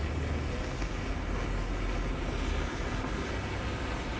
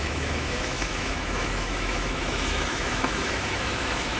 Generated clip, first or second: second